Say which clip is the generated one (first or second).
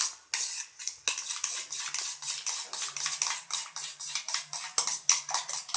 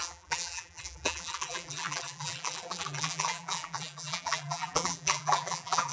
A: second